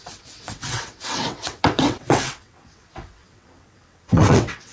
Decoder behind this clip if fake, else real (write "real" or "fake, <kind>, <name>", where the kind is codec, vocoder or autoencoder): fake, vocoder, WaveNeXt